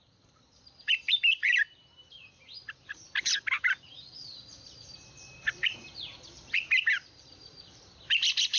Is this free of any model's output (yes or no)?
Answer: no